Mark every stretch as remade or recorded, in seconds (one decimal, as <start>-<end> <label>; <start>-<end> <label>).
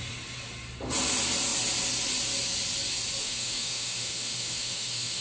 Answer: 0.0-3.2 recorded; 3.2-5.2 remade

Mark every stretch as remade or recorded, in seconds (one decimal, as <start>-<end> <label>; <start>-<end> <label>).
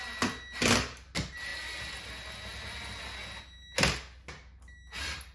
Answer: 0.0-5.3 recorded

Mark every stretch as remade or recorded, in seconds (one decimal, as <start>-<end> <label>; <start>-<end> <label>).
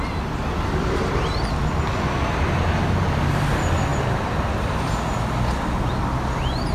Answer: 0.0-6.7 recorded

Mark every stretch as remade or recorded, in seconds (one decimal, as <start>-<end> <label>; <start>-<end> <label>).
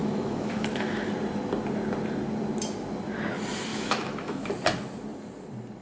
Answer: 0.0-1.1 remade; 1.1-3.7 recorded; 3.7-4.5 remade; 4.5-5.8 recorded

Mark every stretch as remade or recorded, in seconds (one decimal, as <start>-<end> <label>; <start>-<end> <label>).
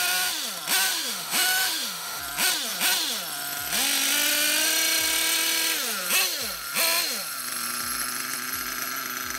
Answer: 0.0-0.9 recorded; 0.9-2.2 remade; 2.2-9.4 recorded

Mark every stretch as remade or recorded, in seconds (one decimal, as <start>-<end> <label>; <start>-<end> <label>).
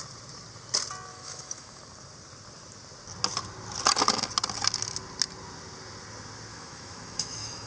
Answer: 0.0-1.1 recorded; 1.1-1.8 remade; 1.8-6.5 recorded; 6.5-7.7 remade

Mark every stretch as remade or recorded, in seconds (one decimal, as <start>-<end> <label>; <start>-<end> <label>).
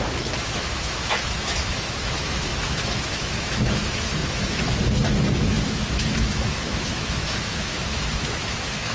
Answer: 0.0-8.9 remade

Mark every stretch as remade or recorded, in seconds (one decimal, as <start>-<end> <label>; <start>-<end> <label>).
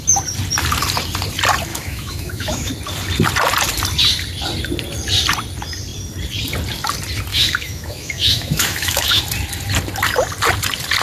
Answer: 0.0-1.7 recorded; 1.7-2.7 remade; 2.7-7.3 recorded; 7.3-9.2 remade; 9.2-11.0 recorded